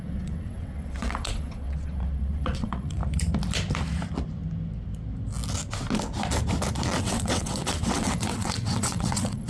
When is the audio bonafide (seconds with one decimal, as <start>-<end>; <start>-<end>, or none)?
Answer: 3.0-7.0